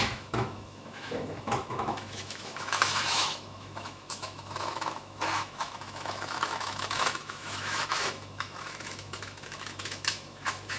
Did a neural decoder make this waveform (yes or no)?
yes